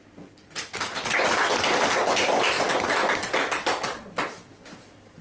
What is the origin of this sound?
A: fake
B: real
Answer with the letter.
B